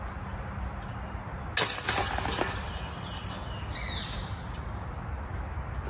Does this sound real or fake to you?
real